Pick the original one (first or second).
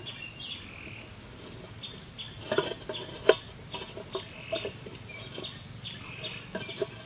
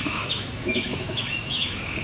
first